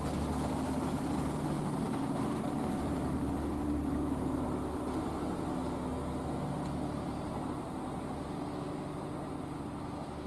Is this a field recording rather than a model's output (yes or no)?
yes